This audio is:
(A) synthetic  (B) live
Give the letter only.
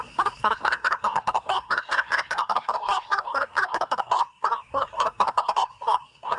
A